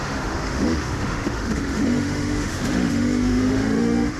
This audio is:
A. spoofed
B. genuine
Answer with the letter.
A